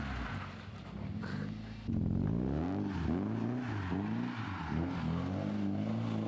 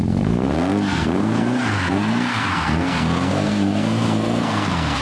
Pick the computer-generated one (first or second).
second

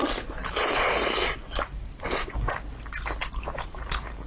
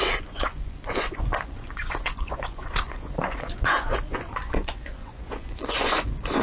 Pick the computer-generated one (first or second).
second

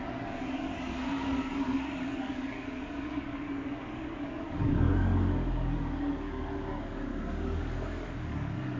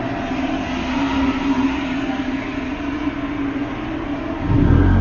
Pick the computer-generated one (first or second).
first